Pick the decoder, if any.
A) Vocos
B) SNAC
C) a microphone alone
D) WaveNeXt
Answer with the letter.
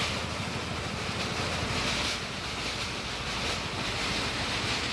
C